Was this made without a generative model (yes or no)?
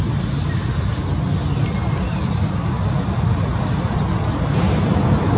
yes